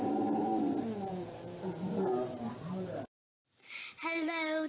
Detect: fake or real fake